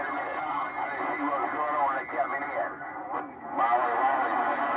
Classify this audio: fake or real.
real